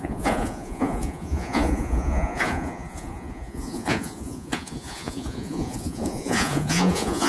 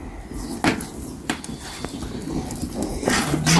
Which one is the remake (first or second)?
first